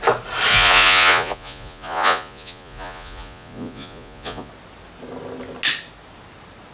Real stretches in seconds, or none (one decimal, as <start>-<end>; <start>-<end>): 0.0-0.5; 4.5-6.7